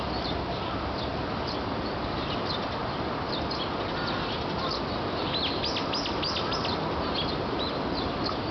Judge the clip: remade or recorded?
recorded